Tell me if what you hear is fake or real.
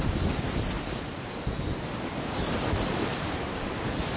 fake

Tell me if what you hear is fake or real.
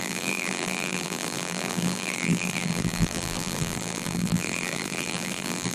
fake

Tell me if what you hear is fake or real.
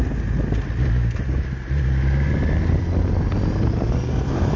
real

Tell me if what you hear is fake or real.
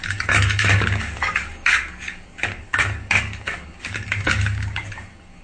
fake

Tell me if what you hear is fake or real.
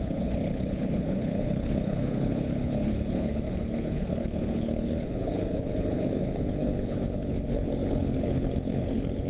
fake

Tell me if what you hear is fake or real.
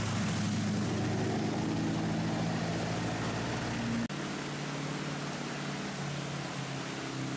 real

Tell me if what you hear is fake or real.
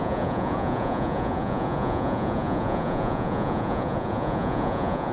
fake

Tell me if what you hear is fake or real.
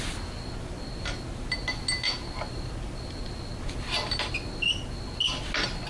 real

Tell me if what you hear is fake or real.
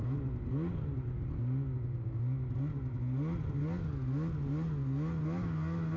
real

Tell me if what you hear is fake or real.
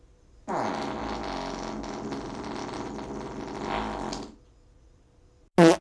real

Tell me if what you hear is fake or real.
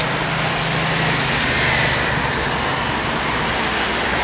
real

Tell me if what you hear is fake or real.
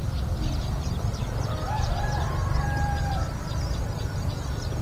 fake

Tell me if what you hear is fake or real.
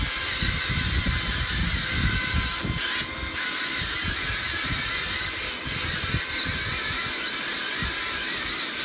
real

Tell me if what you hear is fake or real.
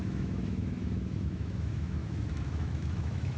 fake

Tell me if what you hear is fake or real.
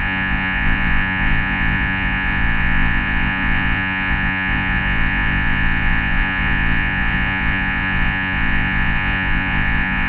fake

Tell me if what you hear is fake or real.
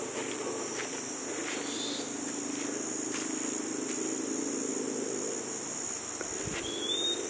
real